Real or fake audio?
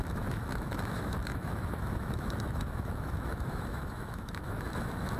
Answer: fake